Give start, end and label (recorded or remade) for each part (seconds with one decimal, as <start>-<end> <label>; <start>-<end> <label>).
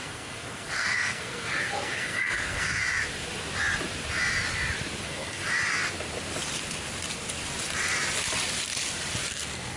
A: 0.0-2.8 remade; 2.8-5.0 recorded; 5.0-5.4 remade; 5.4-9.3 recorded; 9.3-9.8 remade